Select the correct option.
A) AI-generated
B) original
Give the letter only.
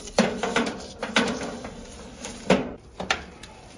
A